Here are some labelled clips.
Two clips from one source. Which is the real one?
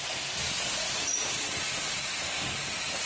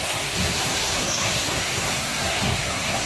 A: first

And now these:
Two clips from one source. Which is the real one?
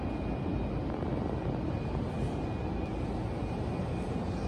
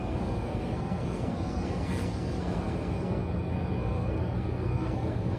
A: first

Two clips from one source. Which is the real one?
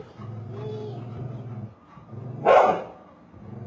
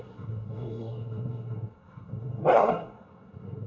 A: first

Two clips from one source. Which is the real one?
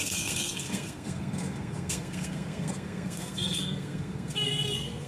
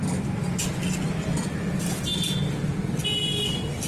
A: second